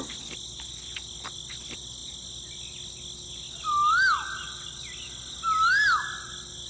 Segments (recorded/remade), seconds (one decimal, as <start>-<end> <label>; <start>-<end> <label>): 0.0-6.7 recorded